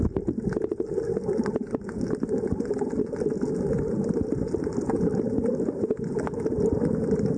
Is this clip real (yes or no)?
yes